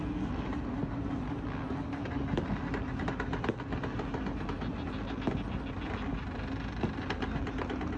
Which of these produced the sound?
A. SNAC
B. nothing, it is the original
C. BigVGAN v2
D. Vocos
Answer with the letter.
B